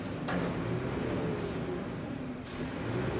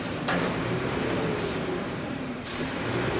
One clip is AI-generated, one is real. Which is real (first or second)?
first